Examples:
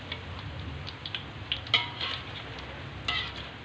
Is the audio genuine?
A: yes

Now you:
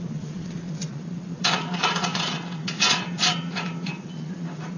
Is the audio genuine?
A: no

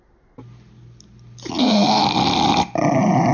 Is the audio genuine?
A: yes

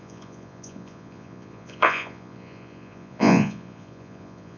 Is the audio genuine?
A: no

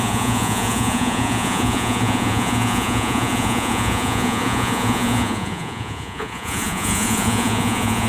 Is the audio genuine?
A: no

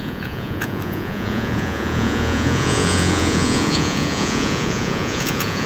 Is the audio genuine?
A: no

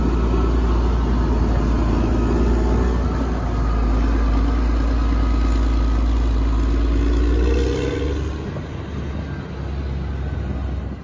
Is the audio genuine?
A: yes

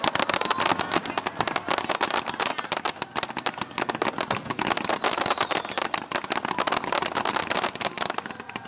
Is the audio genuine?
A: yes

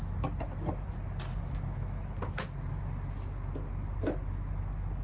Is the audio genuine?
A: yes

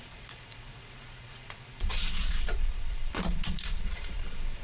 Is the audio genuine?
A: no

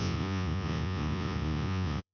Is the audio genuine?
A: no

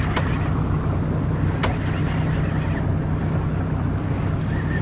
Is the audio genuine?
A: yes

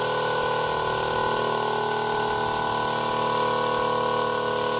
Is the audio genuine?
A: yes